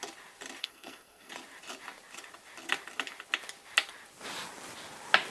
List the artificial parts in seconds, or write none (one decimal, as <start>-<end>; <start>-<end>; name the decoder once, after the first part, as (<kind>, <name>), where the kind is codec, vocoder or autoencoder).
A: 0.6-1.3 (codec, SNAC)